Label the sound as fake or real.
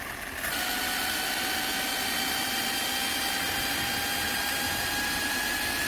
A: real